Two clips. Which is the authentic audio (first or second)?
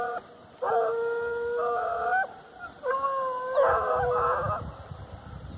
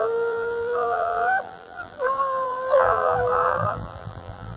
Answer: first